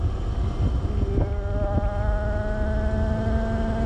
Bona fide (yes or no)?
yes